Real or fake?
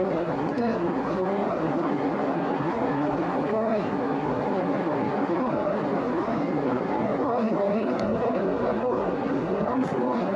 fake